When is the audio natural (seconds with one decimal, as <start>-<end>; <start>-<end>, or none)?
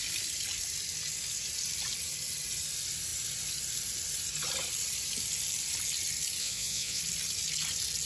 0.0-6.4; 7.0-8.1